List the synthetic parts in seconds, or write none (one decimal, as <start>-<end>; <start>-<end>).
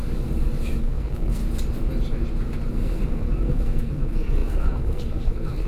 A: 0.8-1.4; 2.7-5.7